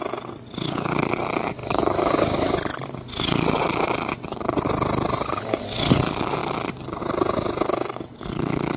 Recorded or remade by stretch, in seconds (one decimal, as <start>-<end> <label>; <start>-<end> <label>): 0.0-1.6 recorded; 1.6-4.1 remade; 4.1-8.8 recorded